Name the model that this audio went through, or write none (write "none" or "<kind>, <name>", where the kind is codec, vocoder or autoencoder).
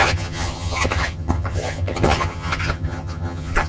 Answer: vocoder, HiFi-GAN